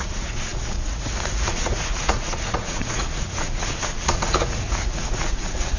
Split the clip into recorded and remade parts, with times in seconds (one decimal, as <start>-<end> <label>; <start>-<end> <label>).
0.0-5.8 remade